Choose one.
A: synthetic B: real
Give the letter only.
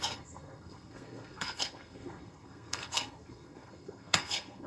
A